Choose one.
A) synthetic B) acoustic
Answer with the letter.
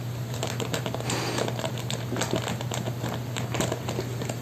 B